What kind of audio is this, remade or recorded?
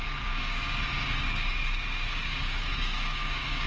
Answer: remade